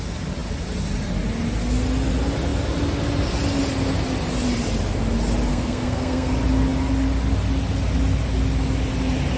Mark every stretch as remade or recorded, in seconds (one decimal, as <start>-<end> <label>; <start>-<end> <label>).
0.0-5.5 recorded; 5.5-6.3 remade; 6.3-9.4 recorded